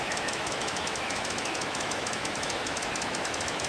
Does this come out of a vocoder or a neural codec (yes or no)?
yes